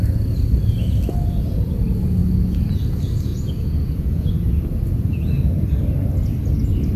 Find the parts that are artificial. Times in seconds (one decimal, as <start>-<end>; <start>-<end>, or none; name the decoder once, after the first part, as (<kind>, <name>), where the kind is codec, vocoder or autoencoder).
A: 3.3-5.3 (vocoder, Vocos)